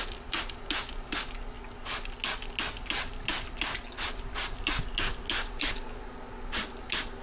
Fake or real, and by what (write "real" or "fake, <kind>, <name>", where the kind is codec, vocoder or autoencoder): real